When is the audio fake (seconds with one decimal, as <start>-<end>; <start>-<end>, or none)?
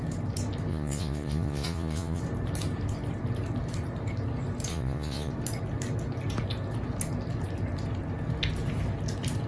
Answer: 0.7-2.2; 4.7-5.3